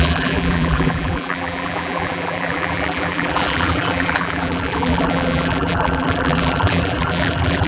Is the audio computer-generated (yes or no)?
yes